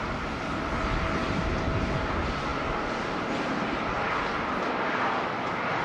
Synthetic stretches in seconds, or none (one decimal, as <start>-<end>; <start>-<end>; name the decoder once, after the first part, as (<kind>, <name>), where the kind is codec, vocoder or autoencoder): none